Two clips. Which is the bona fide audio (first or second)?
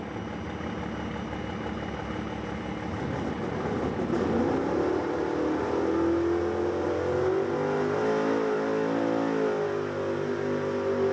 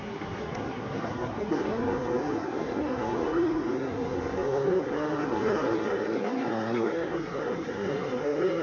first